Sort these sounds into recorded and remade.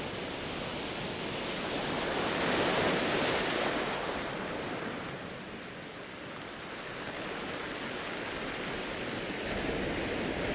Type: recorded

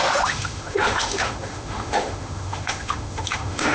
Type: remade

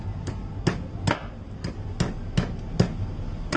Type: recorded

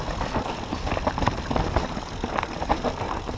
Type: recorded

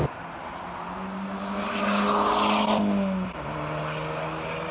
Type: recorded